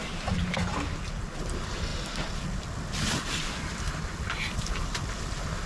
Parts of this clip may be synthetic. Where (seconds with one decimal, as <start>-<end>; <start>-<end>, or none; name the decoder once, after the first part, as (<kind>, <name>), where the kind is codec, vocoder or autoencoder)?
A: 0.0-0.6 (vocoder, BigVGAN v2)